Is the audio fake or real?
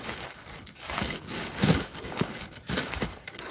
fake